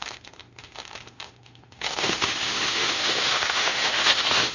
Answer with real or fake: fake